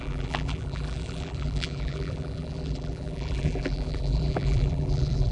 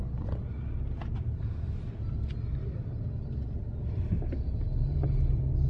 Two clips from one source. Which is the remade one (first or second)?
first